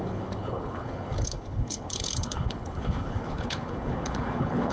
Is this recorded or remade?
remade